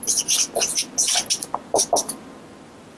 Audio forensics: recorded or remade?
recorded